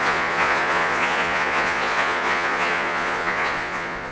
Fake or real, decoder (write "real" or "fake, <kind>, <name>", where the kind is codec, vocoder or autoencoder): fake, vocoder, Vocos